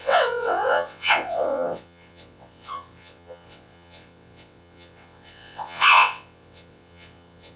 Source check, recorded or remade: remade